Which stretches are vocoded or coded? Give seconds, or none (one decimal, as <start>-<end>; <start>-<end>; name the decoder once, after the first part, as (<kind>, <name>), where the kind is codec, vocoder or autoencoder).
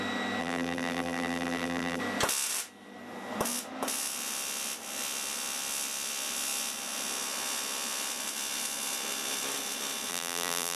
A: 0.4-2.0 (vocoder, BigVGAN v2); 10.1-10.8